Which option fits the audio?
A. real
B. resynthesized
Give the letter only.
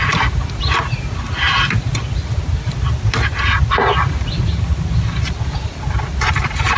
A